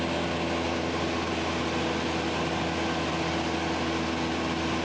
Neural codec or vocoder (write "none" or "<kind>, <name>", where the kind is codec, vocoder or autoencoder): none